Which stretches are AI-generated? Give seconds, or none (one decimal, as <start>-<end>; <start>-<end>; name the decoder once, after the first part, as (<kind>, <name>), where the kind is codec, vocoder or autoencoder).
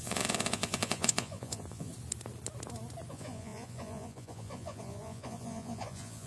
0.0-1.9 (vocoder, Vocos); 3.1-6.3